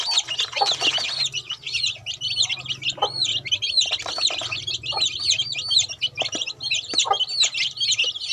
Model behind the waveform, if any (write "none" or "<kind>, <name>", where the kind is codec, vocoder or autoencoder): none